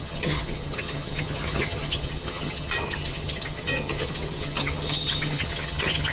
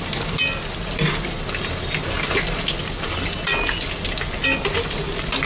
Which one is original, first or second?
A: second